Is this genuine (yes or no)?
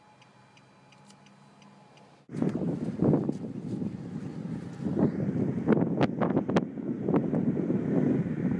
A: yes